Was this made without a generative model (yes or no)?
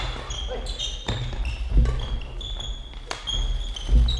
yes